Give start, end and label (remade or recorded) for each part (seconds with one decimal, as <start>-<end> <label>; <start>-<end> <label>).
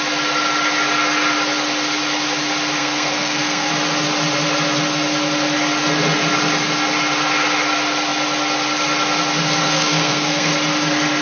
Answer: 0.0-2.8 recorded; 2.8-3.7 remade; 3.7-9.7 recorded; 9.7-10.5 remade; 10.5-11.2 recorded